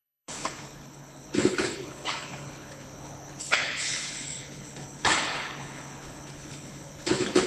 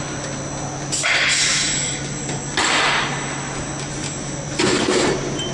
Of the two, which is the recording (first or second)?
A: second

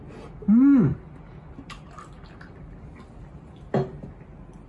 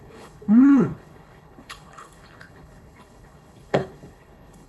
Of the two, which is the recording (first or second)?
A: first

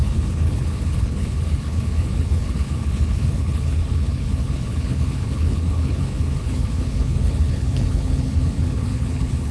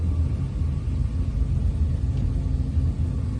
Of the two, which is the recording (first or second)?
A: second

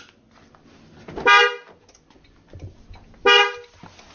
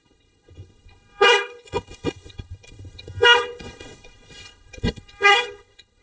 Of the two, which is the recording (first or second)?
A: first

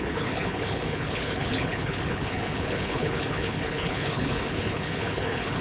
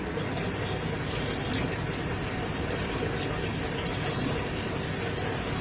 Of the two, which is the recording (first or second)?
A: second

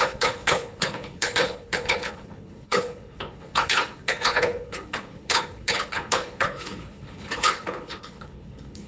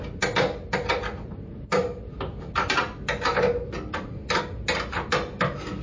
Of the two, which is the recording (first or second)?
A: second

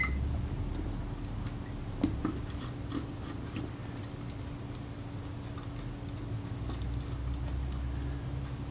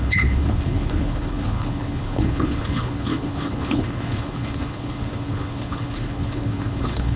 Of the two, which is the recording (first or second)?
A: first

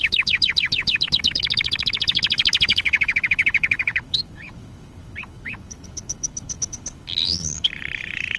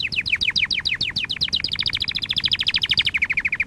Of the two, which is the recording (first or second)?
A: second